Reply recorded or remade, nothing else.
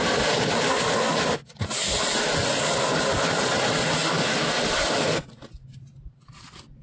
recorded